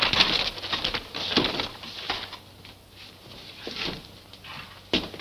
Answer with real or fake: real